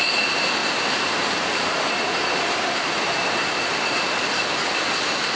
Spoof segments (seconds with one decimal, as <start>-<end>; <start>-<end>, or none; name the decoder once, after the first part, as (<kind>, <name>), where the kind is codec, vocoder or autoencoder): 0.6-3.8 (vocoder, BigVGAN v2)